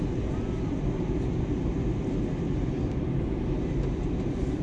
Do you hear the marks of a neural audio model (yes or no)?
no